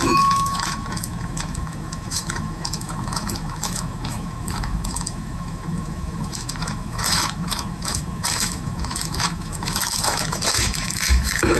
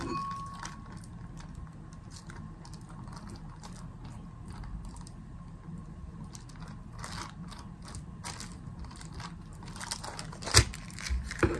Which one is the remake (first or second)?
first